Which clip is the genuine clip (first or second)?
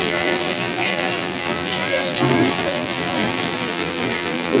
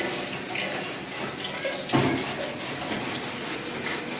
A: second